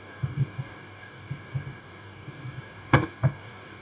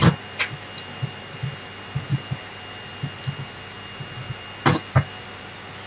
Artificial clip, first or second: first